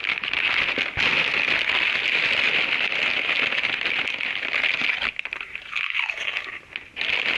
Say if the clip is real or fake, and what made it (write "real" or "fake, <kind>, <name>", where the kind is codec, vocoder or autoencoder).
real